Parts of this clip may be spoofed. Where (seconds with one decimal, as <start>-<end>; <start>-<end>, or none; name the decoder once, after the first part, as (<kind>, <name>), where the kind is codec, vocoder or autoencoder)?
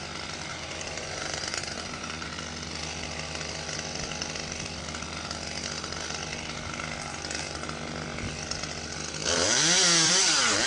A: 0.5-2.3 (vocoder, Vocos)